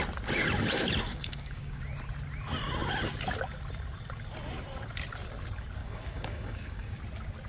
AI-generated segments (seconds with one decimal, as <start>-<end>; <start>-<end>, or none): 1.1-1.8; 5.8-7.0